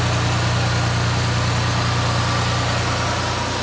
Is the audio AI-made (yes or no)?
no